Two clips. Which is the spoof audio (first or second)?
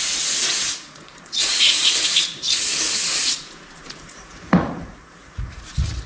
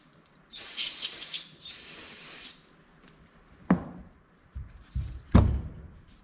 first